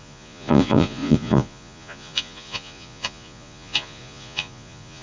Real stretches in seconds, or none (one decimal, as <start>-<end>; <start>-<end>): none